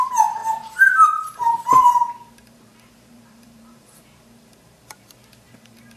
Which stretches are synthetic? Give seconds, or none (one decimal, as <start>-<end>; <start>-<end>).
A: 0.0-6.0